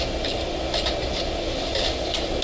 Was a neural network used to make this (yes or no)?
no